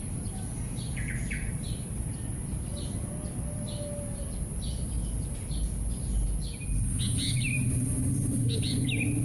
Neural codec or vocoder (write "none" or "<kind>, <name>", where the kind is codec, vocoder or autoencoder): none